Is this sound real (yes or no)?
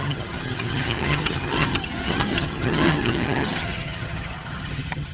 no